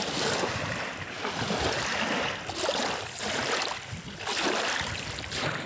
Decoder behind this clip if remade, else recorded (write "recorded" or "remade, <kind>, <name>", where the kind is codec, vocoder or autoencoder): recorded